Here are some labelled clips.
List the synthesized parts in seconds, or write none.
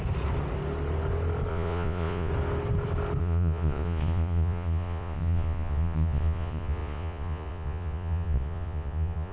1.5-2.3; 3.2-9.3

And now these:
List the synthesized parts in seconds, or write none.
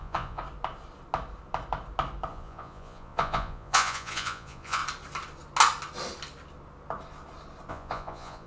0.0-0.4; 2.3-4.8; 7.7-8.5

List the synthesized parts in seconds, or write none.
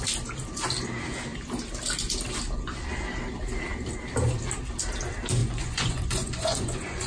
5.4-7.1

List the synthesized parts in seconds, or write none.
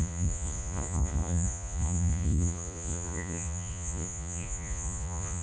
0.0-5.4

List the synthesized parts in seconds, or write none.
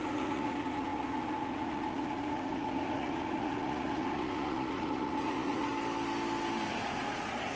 0.0-5.7; 6.8-7.5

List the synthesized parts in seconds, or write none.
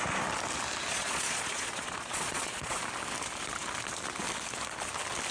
0.9-2.8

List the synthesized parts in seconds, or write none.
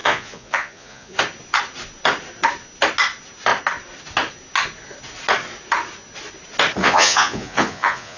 0.0-1.2; 6.8-8.2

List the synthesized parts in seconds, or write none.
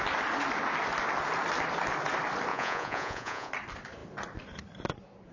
2.5-3.5